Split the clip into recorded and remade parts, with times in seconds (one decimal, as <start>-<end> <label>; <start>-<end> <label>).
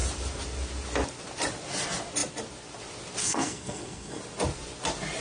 0.0-3.2 recorded; 3.2-4.2 remade; 4.2-5.2 recorded